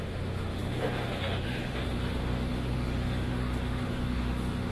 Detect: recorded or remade remade